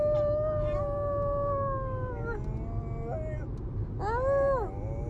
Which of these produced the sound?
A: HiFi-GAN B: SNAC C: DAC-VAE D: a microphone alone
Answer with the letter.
D